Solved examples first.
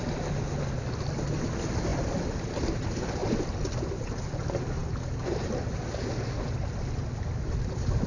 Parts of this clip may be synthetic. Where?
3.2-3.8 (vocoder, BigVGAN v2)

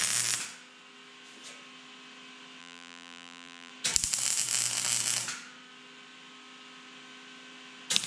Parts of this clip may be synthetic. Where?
2.6-3.7 (vocoder, BigVGAN v2)

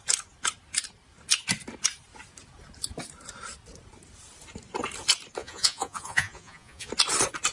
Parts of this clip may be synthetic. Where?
5.4-6.9 (vocoder, Vocos)

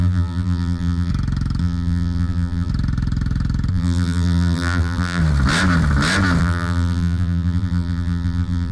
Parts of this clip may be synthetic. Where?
0.0-1.1 (vocoder, BigVGAN v2); 1.6-2.7; 3.7-5.2; 6.4-8.7

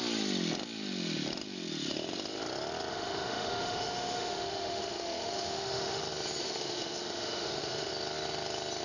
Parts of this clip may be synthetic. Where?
2.9-6.0 (autoencoder, DAC-VAE); 6.4-7.9

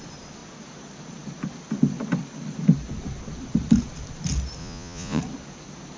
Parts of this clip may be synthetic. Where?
4.6-5.2 (vocoder, Vocos)

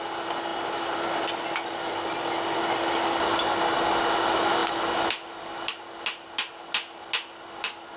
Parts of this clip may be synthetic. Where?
none